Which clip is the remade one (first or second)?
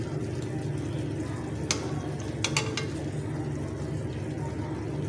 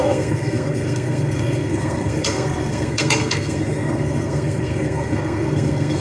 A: second